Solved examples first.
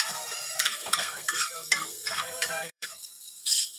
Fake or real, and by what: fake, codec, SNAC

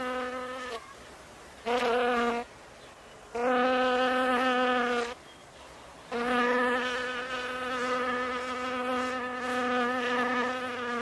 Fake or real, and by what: real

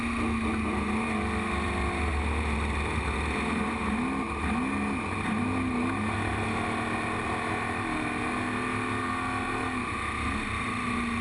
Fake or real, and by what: real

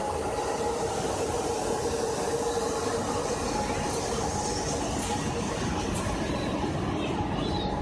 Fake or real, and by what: real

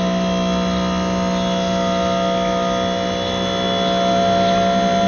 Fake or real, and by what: real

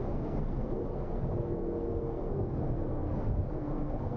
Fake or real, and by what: fake, codec, SNAC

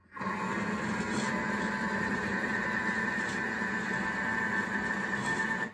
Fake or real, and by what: real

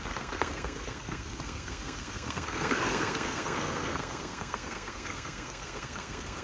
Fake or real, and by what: fake, codec, SNAC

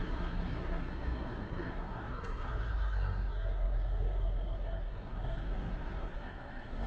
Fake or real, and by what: fake, codec, SNAC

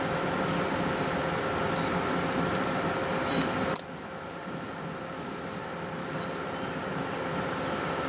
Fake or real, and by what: real